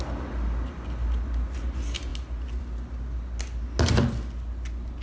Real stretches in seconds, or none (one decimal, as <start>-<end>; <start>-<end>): 0.0-5.0